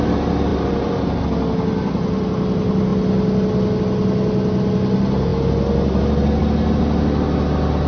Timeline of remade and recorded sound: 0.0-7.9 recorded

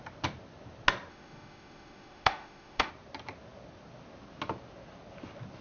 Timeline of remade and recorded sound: 0.0-1.1 recorded; 1.1-2.9 remade; 2.9-5.6 recorded

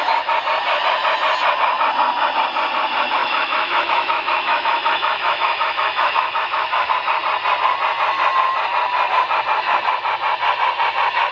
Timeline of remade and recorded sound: 0.0-3.2 recorded; 3.2-6.9 remade; 6.9-11.3 recorded

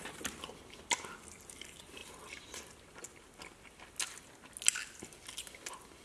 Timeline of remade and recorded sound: 0.0-6.0 recorded